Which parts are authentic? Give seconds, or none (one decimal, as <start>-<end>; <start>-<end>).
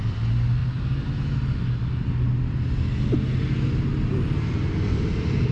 0.0-4.1; 4.6-5.5